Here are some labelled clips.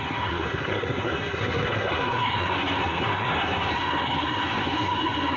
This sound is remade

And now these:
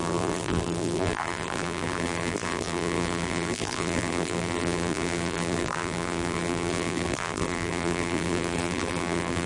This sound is remade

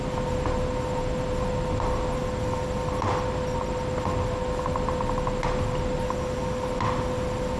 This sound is recorded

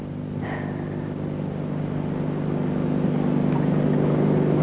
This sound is recorded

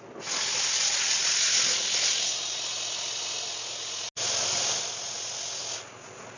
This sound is recorded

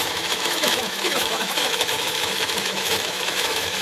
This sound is remade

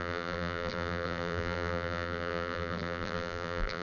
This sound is remade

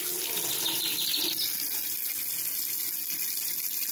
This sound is recorded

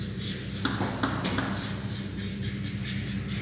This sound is recorded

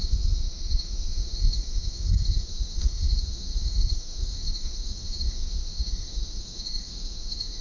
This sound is remade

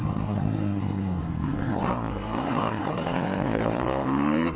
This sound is remade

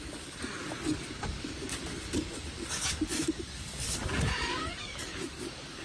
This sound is remade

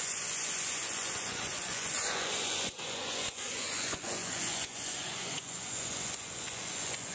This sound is remade